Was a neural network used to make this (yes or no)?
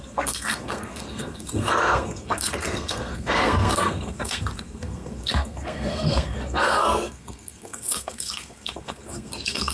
yes